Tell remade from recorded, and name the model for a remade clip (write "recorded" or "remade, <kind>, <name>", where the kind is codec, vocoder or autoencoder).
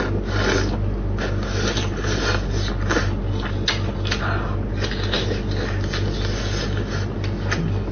recorded